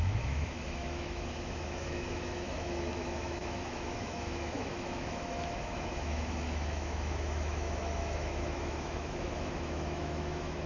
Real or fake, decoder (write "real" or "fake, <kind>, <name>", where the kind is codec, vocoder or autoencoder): fake, autoencoder, DAC-VAE